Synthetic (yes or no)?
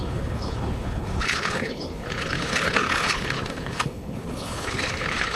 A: yes